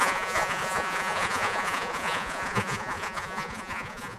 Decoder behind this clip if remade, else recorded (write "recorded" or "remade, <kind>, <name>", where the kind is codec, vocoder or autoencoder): remade, vocoder, Vocos